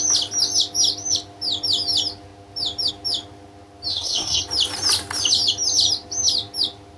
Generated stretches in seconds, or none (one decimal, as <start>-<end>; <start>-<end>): 3.9-4.4